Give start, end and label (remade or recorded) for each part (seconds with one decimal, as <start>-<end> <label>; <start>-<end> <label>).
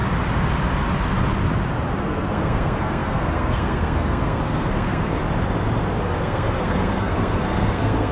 0.0-2.0 recorded; 2.0-5.2 remade; 5.2-6.0 recorded; 6.0-8.1 remade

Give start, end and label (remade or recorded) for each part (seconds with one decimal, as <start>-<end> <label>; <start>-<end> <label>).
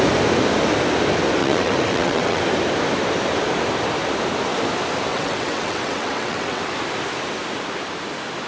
0.0-1.4 recorded; 1.4-2.4 remade; 2.4-5.1 recorded; 5.1-6.6 remade; 6.6-8.5 recorded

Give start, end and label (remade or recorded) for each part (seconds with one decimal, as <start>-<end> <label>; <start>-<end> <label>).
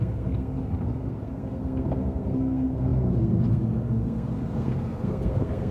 0.0-5.7 remade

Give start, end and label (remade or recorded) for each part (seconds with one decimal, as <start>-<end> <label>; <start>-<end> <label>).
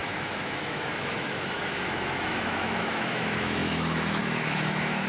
0.0-5.1 remade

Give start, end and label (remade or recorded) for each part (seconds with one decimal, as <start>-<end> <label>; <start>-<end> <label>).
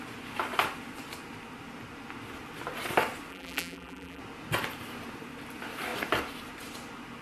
0.0-3.3 recorded; 3.3-4.2 remade; 4.2-7.2 recorded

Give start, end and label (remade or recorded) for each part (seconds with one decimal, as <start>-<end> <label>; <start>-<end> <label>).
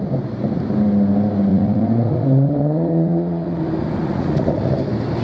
0.0-1.5 recorded; 1.5-3.6 remade; 3.6-4.0 recorded; 4.0-4.7 remade; 4.7-5.2 recorded